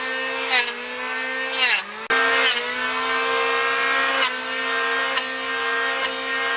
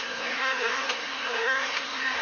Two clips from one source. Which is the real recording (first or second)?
first